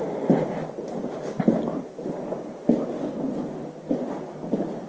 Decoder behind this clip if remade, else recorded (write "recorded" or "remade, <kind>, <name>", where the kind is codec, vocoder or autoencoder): recorded